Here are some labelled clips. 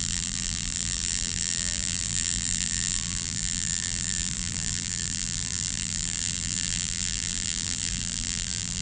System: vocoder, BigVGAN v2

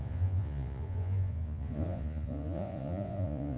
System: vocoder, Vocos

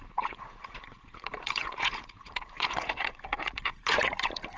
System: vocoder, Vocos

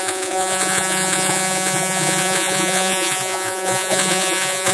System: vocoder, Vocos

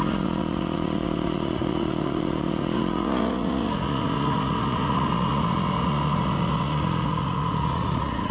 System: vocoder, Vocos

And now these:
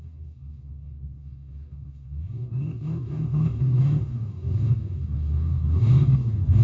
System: codec, DAC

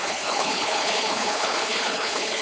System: codec, HILCodec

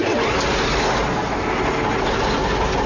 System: none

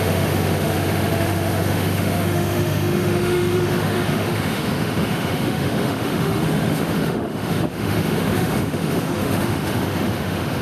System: autoencoder, DAC-VAE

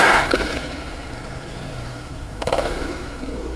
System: codec, SNAC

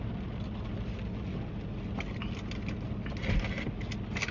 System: none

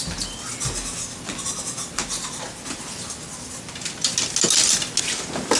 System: none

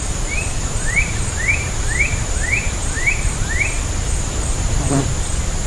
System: vocoder, BigVGAN v2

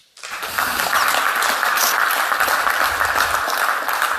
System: none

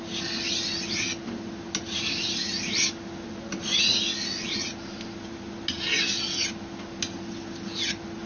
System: none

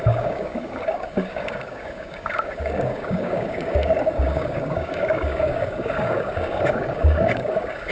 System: codec, DAC